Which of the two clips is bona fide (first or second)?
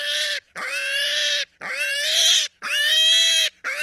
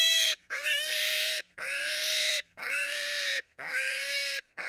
first